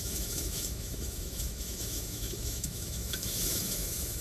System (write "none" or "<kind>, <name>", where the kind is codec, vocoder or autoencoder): autoencoder, DAC-VAE